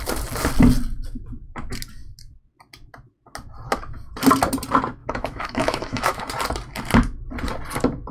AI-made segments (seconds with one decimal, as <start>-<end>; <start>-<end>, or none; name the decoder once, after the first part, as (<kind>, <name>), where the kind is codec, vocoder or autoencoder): 5.0-6.2 (autoencoder, DAC-VAE)

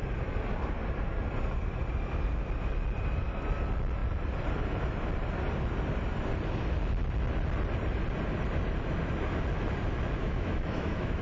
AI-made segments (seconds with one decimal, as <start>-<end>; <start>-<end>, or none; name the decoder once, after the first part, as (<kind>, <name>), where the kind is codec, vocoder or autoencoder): 10.2-11.2 (autoencoder, DAC-VAE)